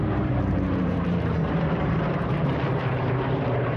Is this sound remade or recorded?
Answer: remade